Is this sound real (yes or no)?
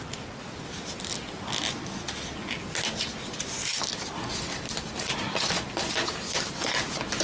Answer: yes